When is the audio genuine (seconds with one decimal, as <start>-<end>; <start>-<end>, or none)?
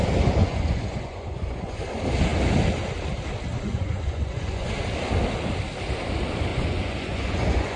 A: 0.0-0.4; 1.8-3.5; 4.7-6.5